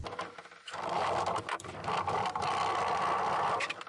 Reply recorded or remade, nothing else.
recorded